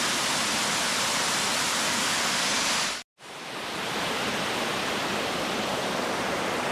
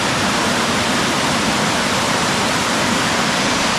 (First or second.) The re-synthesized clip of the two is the second